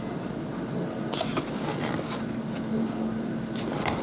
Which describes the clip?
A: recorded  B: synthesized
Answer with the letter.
A